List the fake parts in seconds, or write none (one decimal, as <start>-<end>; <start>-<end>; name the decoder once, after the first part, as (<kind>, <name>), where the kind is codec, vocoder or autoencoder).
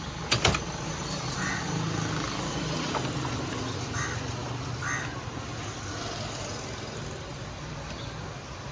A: none